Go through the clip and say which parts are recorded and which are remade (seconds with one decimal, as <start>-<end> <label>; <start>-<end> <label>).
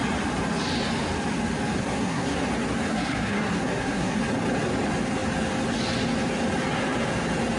0.0-1.8 recorded; 1.8-2.5 remade; 2.5-2.9 recorded; 2.9-4.2 remade; 4.2-7.6 recorded